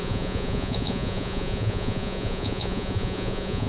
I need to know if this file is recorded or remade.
remade